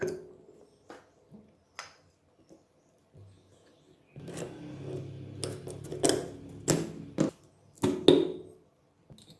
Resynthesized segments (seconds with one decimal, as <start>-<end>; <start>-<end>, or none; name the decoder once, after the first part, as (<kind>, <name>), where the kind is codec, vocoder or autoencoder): none